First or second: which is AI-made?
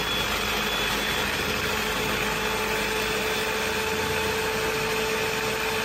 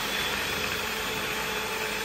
second